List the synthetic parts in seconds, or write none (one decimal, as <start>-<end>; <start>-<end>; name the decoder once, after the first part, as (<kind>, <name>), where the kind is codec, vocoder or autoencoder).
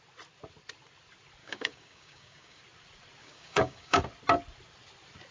1.4-2.6 (codec, DAC); 3.2-4.0